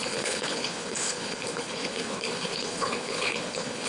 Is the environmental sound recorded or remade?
remade